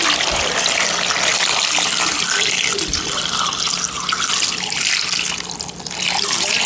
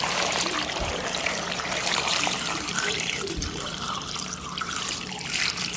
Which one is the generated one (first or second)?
second